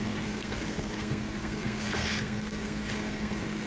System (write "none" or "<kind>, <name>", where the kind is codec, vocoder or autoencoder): codec, SNAC